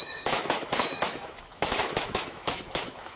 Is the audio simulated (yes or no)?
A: yes